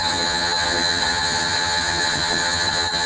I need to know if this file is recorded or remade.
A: remade